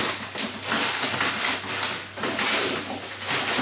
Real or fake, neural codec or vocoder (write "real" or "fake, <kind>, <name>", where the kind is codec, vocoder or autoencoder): real